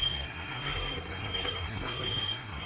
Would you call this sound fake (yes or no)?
yes